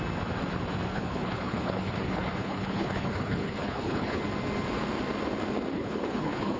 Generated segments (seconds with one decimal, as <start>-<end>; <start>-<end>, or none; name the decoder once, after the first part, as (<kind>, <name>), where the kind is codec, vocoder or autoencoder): 0.9-4.2 (codec, HILCodec); 5.7-6.6